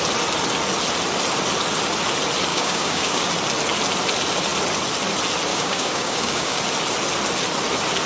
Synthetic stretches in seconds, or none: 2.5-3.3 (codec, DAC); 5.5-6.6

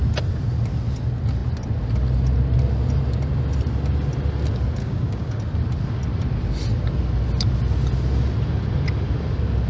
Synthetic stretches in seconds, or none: 4.8-5.4 (codec, DAC)